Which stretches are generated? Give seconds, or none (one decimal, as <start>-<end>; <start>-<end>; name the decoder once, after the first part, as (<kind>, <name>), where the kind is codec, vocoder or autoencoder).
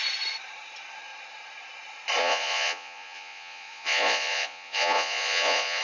2.2-5.8 (vocoder, Vocos)